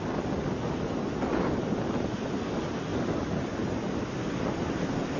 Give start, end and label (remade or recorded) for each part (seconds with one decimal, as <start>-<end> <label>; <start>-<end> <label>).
0.0-5.2 recorded